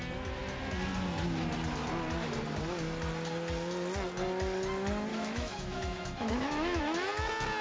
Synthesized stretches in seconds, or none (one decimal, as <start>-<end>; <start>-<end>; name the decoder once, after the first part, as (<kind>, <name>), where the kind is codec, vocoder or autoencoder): 5.1-6.8 (autoencoder, DAC-VAE)